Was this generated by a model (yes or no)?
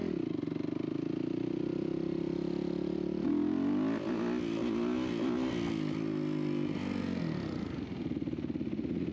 no